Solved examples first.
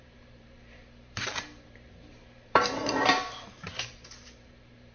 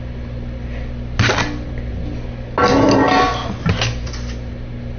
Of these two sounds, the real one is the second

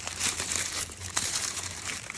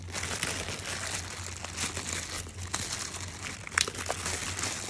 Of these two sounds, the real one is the second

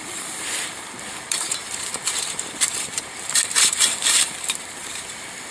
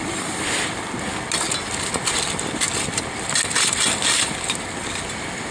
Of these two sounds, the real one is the second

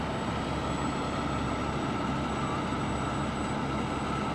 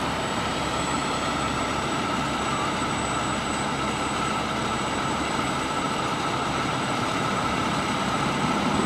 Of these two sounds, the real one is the first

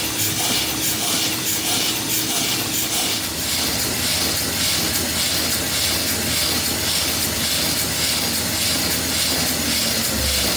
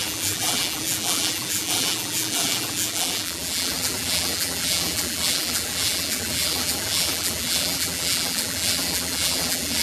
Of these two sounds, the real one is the first